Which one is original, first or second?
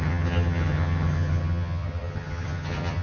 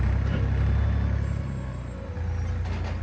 second